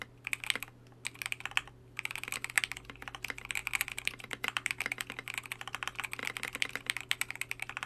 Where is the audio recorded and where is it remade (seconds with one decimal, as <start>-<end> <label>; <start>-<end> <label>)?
0.0-7.9 recorded